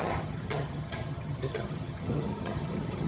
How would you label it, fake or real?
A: fake